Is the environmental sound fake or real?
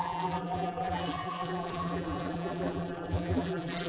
fake